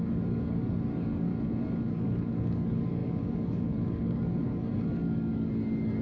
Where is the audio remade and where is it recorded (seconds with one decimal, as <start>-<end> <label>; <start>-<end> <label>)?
0.0-1.3 remade; 1.3-1.9 recorded; 1.9-6.0 remade